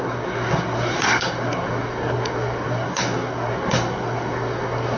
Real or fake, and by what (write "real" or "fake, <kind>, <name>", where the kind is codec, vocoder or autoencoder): fake, codec, SNAC